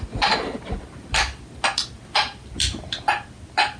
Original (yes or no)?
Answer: yes